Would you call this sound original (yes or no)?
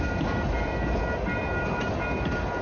yes